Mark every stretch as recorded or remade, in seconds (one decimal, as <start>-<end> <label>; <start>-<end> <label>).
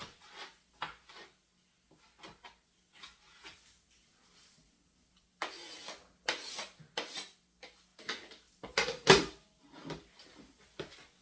0.0-11.2 recorded